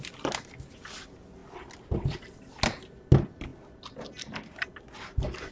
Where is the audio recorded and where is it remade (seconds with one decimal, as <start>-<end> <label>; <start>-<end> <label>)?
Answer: 0.0-5.5 recorded